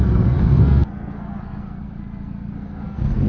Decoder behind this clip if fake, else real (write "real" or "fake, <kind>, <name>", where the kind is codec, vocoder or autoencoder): fake, codec, SNAC